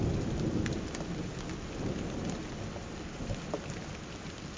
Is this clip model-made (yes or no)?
no